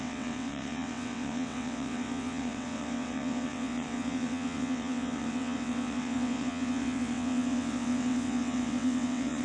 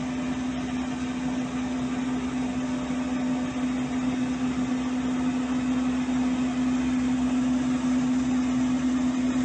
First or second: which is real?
second